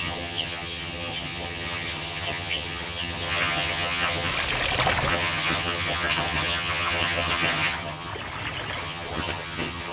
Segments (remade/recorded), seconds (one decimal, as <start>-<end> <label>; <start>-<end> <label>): 0.0-4.3 remade; 4.3-5.1 recorded; 5.1-8.1 remade; 8.1-8.8 recorded; 8.8-9.9 remade